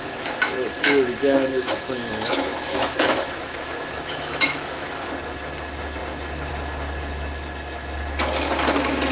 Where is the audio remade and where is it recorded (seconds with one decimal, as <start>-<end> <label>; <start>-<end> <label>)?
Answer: 0.0-5.1 remade; 5.1-9.1 recorded